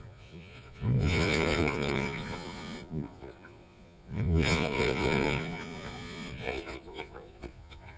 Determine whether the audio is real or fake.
fake